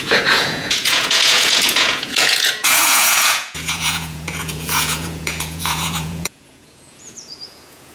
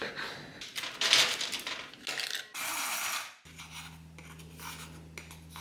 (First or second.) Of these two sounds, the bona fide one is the second